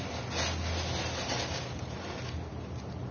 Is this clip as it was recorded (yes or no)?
yes